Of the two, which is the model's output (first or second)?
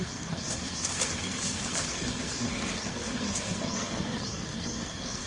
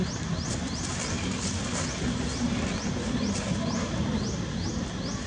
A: first